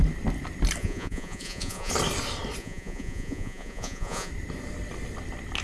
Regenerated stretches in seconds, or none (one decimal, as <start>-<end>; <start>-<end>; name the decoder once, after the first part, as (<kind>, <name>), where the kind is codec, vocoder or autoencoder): 0.8-1.9 (vocoder, Vocos); 2.6-4.3